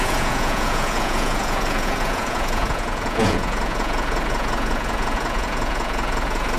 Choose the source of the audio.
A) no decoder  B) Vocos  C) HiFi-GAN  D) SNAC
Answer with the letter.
B